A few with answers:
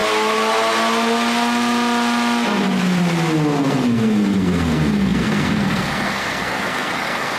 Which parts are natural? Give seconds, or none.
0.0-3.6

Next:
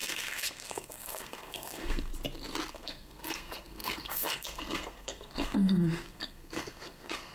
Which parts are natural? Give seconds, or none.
2.1-2.7

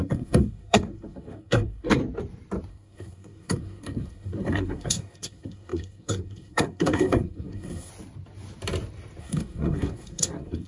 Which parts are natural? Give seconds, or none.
2.0-2.7; 7.9-9.2

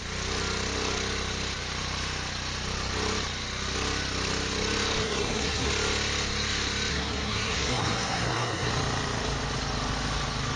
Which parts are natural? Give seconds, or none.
0.0-5.0; 5.7-6.9; 8.7-10.6

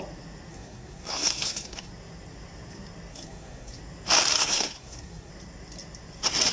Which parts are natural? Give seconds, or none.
0.0-0.5; 1.9-3.1; 3.8-4.3; 5.3-6.5